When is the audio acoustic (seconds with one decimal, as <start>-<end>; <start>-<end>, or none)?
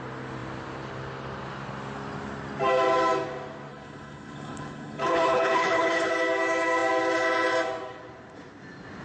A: 0.0-3.7; 6.1-9.0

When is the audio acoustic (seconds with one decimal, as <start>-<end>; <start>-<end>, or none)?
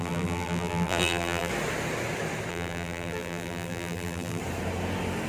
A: 1.5-2.5; 4.4-5.3